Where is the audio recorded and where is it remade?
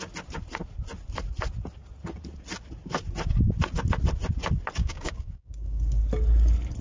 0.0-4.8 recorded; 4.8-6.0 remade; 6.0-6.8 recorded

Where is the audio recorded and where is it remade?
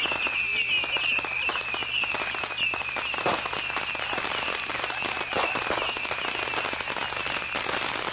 0.0-8.1 recorded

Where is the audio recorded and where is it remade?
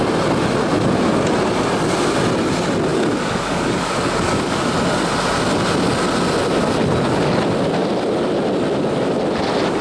0.0-2.9 recorded; 2.9-4.7 remade; 4.7-9.8 recorded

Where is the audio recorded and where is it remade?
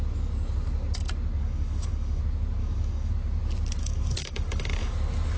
0.0-1.4 recorded; 1.4-2.2 remade; 2.2-2.6 recorded; 2.6-3.1 remade; 3.1-3.8 recorded; 3.8-4.9 remade; 4.9-5.4 recorded